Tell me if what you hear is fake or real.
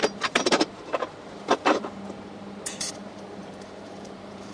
fake